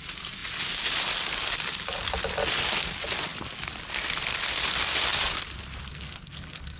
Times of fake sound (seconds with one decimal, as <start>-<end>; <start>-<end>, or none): 5.9-6.8